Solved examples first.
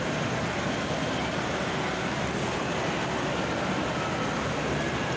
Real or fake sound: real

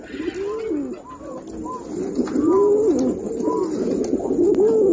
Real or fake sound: real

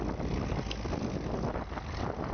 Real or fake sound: real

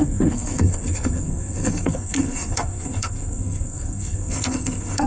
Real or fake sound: fake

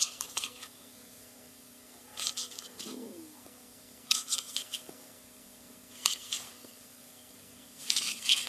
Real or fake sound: fake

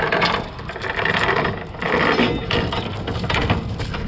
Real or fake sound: real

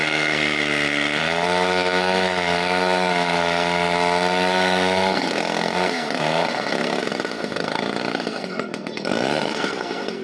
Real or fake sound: fake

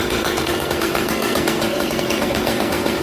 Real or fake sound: fake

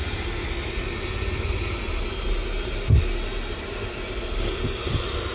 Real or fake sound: real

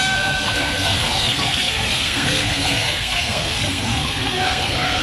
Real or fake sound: fake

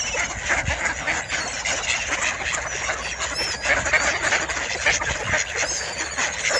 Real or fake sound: real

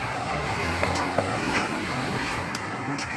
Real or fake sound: fake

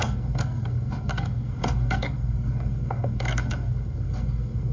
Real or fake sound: fake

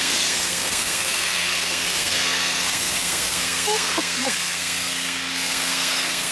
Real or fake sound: fake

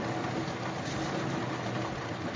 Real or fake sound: real